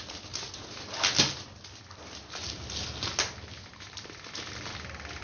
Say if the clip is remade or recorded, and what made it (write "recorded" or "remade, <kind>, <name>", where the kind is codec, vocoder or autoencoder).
recorded